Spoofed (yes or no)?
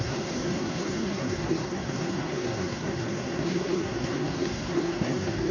yes